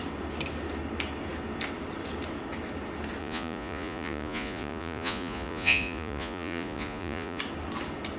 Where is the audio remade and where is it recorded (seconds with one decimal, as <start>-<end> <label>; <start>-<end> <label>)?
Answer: 0.0-3.2 recorded; 3.2-7.4 remade; 7.4-8.2 recorded